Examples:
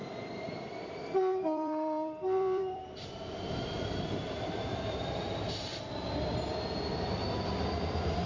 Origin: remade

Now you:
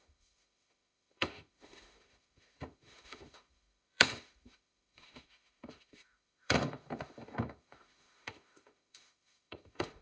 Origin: remade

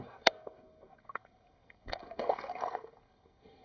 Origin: remade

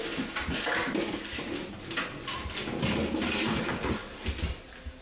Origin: recorded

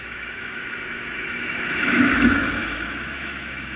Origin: remade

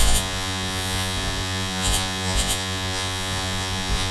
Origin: remade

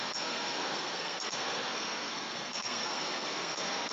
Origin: remade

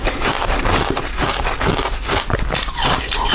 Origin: recorded